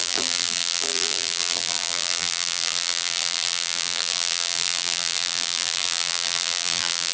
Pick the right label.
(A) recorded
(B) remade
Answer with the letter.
B